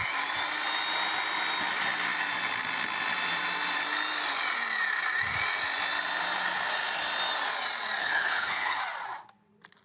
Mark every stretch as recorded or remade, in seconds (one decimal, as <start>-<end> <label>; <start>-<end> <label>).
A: 0.0-8.0 recorded; 8.0-8.8 remade; 8.8-9.8 recorded